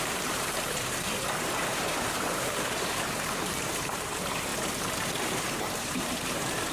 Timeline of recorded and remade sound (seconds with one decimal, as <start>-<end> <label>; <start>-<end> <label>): 0.0-4.5 remade; 4.5-5.6 recorded; 5.6-6.7 remade